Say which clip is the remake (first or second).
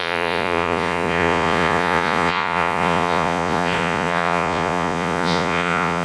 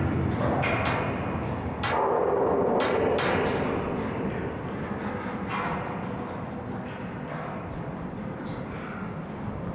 first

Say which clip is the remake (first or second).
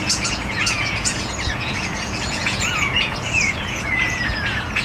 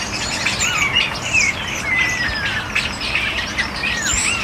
first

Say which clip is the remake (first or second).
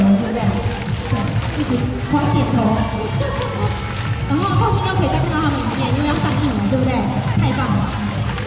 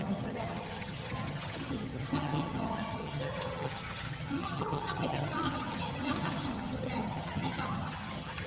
second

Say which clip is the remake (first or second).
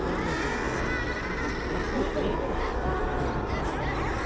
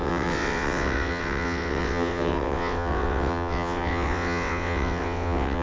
second